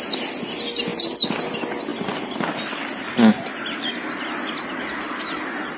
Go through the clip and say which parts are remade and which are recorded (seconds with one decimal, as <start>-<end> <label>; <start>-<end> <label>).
0.0-5.8 recorded